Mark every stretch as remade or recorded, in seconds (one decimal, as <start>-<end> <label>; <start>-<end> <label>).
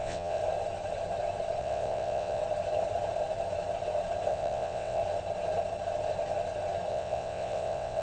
0.0-0.4 remade; 0.4-1.6 recorded; 1.6-2.4 remade; 2.4-4.3 recorded; 4.3-5.0 remade; 5.0-6.9 recorded; 6.9-8.0 remade